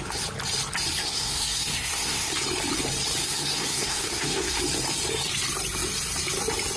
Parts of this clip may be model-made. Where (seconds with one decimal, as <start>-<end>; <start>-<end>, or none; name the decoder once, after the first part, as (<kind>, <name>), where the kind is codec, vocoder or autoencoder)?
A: 1.0-2.3 (codec, SNAC); 3.2-4.6